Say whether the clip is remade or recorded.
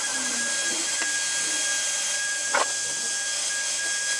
recorded